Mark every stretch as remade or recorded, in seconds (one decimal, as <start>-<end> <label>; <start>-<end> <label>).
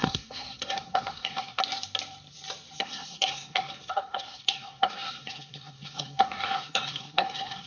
0.0-1.6 remade; 1.6-2.8 recorded; 2.8-7.7 remade